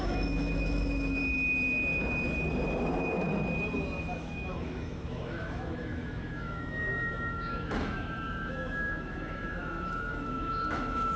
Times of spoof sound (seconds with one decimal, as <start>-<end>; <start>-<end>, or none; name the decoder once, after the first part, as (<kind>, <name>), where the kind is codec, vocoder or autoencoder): 0.0-1.2 (autoencoder, DAC-VAE); 4.0-11.2